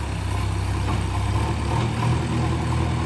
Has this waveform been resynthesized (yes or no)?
no